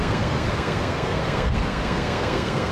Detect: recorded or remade remade